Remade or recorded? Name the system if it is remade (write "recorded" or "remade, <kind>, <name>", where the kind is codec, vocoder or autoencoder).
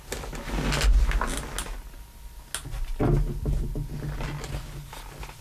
recorded